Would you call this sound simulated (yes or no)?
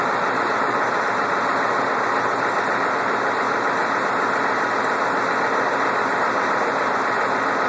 no